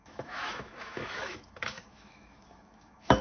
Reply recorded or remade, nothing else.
remade